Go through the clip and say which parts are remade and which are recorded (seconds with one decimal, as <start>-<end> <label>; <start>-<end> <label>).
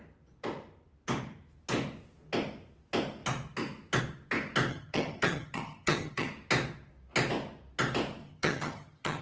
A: 0.0-4.7 recorded; 4.7-6.3 remade; 6.3-8.2 recorded; 8.2-9.2 remade